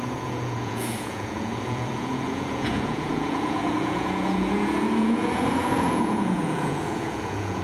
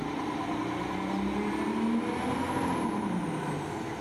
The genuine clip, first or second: second